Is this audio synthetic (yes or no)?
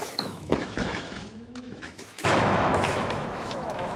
yes